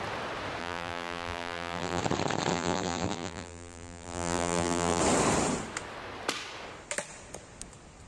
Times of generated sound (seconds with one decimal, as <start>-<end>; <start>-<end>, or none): 0.6-2.0; 2.5-5.0